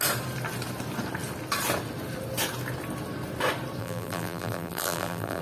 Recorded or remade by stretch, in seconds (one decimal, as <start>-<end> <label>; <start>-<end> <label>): 0.0-3.8 recorded; 3.8-5.4 remade